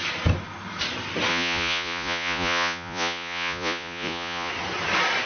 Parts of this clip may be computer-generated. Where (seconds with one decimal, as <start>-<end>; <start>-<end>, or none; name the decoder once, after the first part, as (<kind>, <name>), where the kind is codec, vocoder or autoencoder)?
1.3-4.5 (vocoder, Vocos)

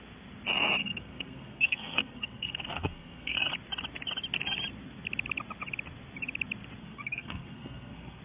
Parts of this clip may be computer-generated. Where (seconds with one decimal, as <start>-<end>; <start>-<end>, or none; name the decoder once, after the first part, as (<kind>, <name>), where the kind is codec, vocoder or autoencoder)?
0.8-3.5 (codec, SNAC); 6.8-8.2

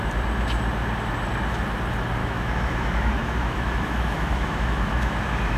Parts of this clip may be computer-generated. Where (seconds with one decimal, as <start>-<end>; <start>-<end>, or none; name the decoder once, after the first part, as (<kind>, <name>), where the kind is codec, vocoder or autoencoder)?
2.2-5.6 (autoencoder, DAC-VAE)

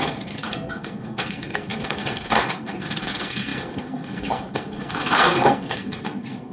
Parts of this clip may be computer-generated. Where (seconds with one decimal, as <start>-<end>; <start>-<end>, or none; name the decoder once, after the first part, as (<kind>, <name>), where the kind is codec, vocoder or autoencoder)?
0.0-6.5 (codec, SNAC)